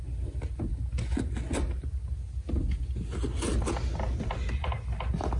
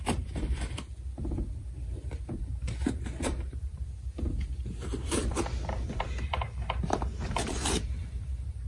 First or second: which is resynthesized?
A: second